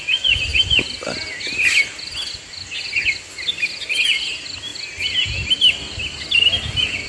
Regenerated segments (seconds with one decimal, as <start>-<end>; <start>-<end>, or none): none